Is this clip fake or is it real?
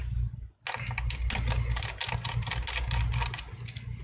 real